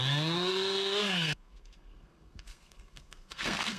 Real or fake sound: fake